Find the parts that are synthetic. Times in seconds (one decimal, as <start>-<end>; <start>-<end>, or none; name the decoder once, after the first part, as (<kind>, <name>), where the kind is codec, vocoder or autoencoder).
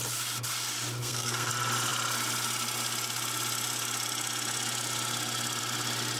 1.0-1.5 (codec, SNAC)